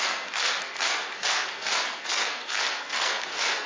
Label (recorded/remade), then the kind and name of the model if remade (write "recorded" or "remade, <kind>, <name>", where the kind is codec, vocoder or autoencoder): remade, codec, SNAC